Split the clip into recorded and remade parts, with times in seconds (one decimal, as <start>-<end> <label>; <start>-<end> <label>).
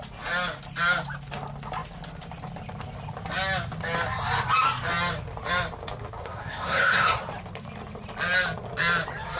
0.0-6.2 recorded; 6.2-7.2 remade; 7.2-9.4 recorded